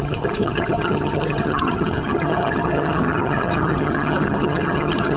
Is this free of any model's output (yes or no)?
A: no